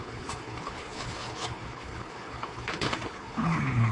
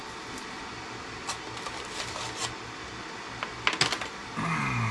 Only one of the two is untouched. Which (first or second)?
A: second